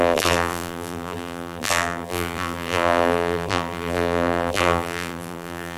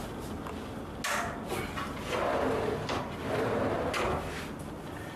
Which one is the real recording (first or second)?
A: second